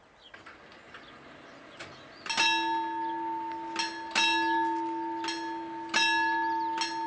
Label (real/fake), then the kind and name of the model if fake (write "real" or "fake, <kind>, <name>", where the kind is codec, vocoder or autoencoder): real